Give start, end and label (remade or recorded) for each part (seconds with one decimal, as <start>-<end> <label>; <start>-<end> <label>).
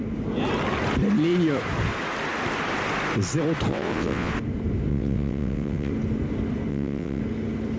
0.0-3.7 recorded; 3.7-4.3 remade; 4.3-4.9 recorded; 4.9-5.9 remade; 5.9-6.7 recorded; 6.7-7.2 remade; 7.2-7.8 recorded